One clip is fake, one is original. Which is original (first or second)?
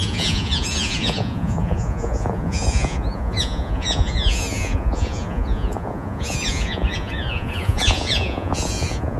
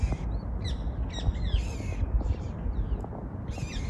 second